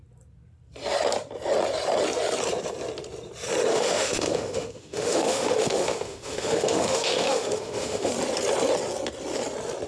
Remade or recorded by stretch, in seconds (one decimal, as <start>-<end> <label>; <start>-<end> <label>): 0.0-3.7 recorded; 3.7-8.1 remade; 8.1-9.9 recorded